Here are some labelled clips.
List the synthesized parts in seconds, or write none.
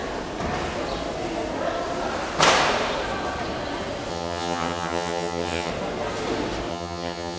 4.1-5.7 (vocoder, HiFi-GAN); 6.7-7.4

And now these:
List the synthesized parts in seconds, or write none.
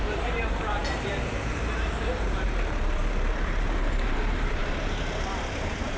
0.0-6.0 (vocoder, BigVGAN v2)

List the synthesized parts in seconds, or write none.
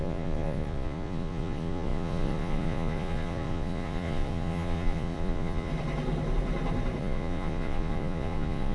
0.0-5.7 (vocoder, Vocos); 7.0-8.7